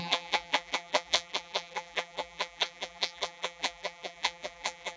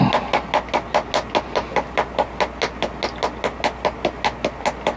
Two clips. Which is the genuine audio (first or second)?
second